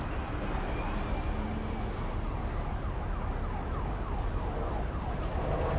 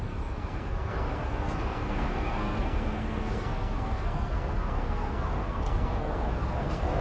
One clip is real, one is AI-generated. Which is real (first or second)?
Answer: first